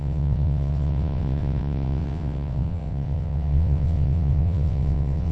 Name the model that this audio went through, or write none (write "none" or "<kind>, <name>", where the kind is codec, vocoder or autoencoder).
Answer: vocoder, WaveNeXt